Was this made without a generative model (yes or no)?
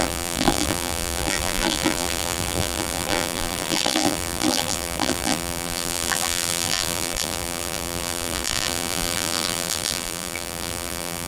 no